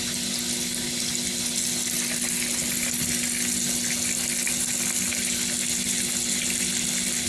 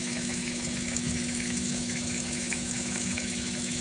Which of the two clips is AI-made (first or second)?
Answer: second